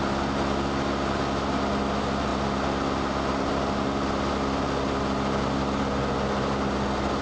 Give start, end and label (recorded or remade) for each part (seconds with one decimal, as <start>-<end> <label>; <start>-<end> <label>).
0.0-7.2 recorded